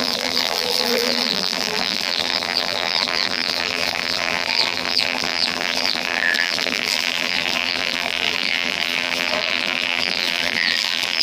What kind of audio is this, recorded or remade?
remade